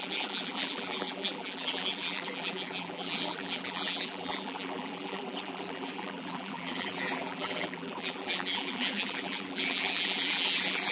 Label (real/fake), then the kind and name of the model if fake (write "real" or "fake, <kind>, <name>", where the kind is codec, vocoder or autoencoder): fake, vocoder, BigVGAN v2